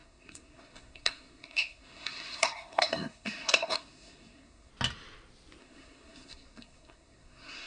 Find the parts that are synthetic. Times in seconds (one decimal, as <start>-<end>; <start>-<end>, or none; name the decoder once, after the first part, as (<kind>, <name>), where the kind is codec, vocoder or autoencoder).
0.0-4.7 (codec, SNAC); 5.6-7.7